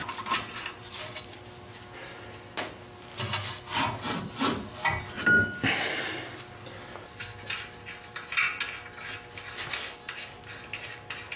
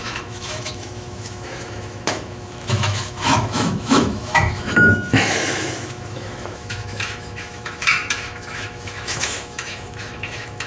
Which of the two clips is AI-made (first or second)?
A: second